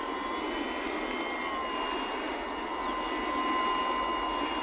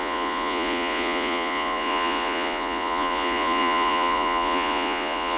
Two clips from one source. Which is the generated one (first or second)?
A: second